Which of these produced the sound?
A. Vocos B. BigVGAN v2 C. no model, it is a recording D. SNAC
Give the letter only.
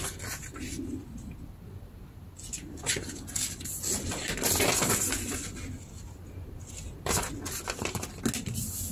C